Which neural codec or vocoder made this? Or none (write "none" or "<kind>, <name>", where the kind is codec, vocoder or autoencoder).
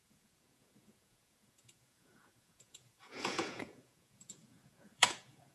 vocoder, Vocos